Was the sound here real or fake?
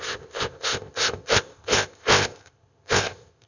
fake